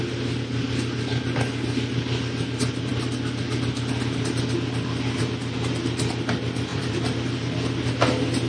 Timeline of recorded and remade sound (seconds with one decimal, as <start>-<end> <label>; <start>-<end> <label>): 0.0-6.7 recorded; 6.7-7.3 remade; 7.3-8.5 recorded